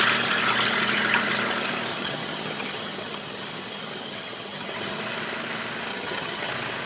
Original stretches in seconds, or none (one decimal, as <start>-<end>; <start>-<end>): 0.0-1.9; 5.0-5.9; 6.5-6.9